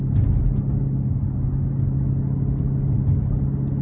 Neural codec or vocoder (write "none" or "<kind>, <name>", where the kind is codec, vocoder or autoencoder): none